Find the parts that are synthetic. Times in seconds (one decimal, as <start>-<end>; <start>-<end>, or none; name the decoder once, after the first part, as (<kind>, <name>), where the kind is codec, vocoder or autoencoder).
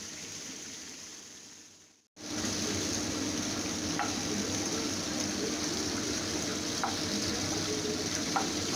0.0-1.1 (vocoder, BigVGAN v2); 6.1-6.5; 8.1-8.8